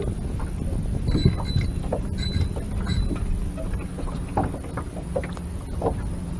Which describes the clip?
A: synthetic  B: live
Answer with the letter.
B